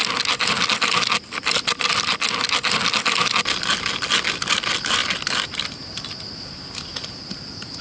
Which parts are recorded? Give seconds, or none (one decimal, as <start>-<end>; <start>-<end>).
0.0-7.8